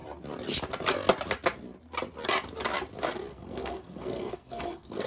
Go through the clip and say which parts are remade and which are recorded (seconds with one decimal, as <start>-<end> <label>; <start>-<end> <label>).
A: 0.0-3.3 recorded; 3.3-5.1 remade